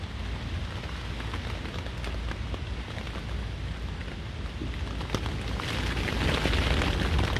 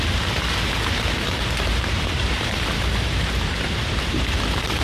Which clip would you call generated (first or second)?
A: second